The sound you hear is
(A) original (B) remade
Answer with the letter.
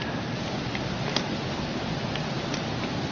A